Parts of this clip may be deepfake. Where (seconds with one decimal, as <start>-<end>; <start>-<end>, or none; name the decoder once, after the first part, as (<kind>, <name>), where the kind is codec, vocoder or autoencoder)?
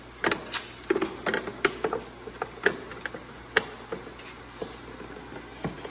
none